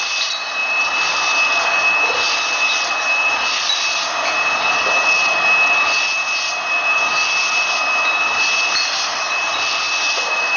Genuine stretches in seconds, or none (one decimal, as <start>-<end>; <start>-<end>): 0.0-10.6

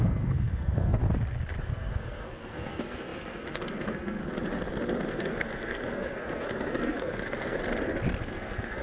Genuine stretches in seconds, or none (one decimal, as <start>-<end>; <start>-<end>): 1.0-1.6; 4.2-5.1; 7.6-8.2

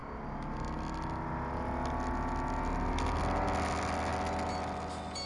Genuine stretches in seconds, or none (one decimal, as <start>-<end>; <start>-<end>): 0.0-5.3